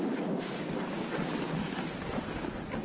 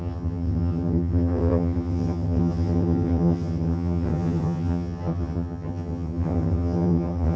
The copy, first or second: second